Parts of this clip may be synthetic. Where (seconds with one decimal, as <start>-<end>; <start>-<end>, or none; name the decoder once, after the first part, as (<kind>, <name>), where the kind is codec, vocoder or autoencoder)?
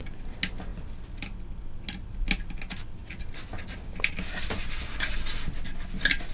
none